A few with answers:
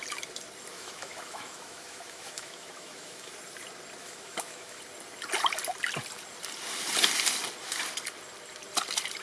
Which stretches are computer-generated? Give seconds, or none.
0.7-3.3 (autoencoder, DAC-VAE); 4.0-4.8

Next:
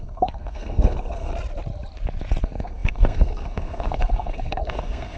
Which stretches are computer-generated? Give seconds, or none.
0.0-1.3 (codec, SNAC); 2.4-5.2

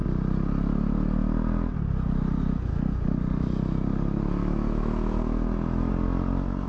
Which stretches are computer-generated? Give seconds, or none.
4.4-5.9 (autoencoder, DAC-VAE)

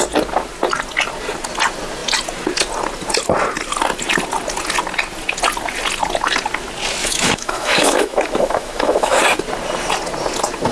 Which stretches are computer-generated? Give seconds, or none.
7.0-9.2 (autoencoder, DAC-VAE)

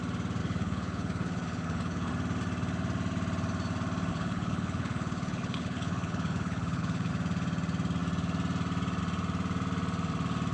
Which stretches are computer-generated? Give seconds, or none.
0.4-2.1 (codec, HILCodec); 4.1-7.1

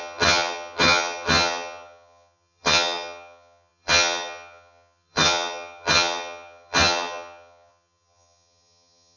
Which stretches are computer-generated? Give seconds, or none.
0.0-9.2 (vocoder, HiFi-GAN)